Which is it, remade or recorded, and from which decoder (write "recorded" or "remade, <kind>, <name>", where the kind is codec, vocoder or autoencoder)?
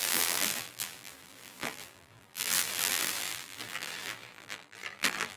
remade, vocoder, BigVGAN v2